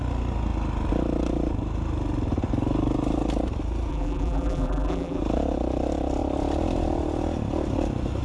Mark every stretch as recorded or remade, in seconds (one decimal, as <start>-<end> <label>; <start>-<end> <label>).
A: 0.0-3.9 recorded; 3.9-5.2 remade; 5.2-8.2 recorded